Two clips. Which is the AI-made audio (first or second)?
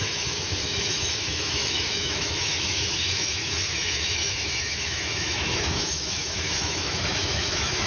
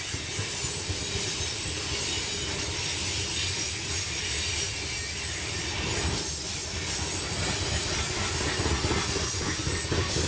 first